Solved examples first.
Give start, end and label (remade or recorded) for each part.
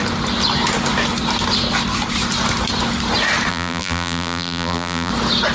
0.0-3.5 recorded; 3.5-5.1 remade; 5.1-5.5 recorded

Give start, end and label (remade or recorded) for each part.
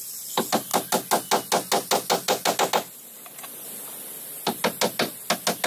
0.0-5.7 recorded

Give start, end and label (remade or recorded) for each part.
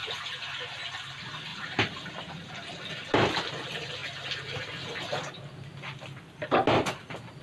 0.0-7.4 recorded